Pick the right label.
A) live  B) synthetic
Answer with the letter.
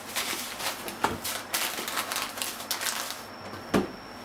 A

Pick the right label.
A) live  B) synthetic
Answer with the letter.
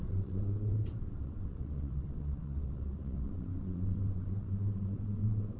B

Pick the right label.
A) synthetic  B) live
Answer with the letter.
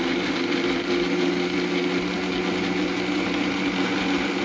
B